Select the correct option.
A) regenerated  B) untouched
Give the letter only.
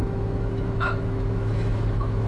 A